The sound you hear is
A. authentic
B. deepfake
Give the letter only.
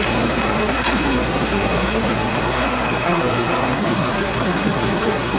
B